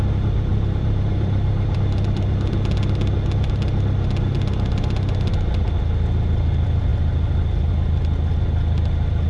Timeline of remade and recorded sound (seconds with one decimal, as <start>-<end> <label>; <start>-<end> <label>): 0.0-0.5 recorded; 0.5-1.8 remade; 1.8-9.3 recorded